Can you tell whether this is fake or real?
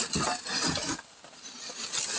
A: real